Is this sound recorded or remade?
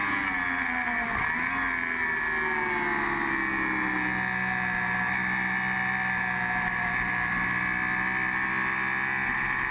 recorded